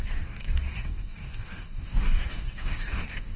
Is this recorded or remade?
remade